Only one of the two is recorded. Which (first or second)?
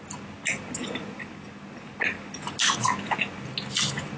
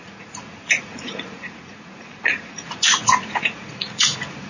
first